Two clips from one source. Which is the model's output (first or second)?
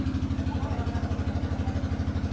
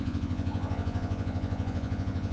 second